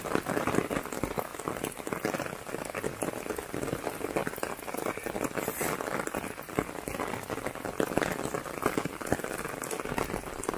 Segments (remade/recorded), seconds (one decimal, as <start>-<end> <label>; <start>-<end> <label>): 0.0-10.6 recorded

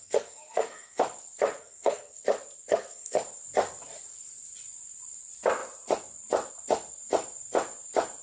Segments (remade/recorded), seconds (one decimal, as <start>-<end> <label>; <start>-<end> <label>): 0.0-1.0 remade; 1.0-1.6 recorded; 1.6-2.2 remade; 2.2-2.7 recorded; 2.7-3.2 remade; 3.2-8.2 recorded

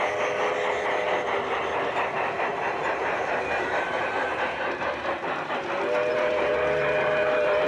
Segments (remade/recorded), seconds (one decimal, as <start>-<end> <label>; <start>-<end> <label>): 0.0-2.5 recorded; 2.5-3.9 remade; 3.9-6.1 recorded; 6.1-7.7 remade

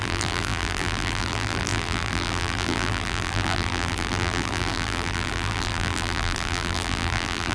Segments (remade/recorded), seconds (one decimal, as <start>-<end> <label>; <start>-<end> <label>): 0.0-7.5 remade

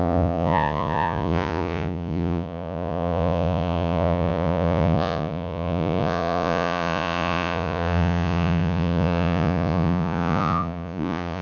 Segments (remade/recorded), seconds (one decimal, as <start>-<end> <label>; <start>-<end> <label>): 0.0-11.4 remade

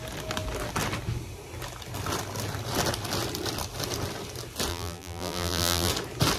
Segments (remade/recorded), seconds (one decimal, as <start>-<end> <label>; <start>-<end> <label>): 0.0-4.7 recorded; 4.7-5.9 remade; 5.9-6.4 recorded

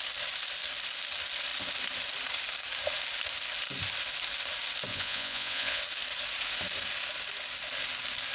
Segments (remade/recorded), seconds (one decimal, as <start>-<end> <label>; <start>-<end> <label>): 0.0-4.9 recorded; 4.9-5.8 remade; 5.8-8.3 recorded

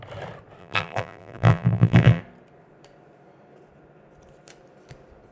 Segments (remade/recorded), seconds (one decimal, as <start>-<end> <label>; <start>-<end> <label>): 0.0-0.6 recorded; 0.6-2.2 remade; 2.2-5.3 recorded